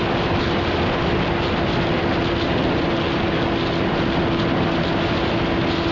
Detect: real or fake real